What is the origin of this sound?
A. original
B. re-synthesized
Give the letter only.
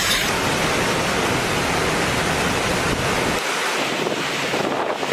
A